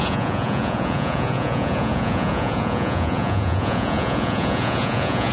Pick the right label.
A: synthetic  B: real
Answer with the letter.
A